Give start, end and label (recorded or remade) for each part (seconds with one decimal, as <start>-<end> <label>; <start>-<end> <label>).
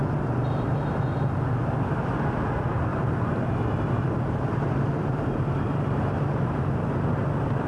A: 0.0-2.9 recorded; 2.9-6.7 remade; 6.7-7.7 recorded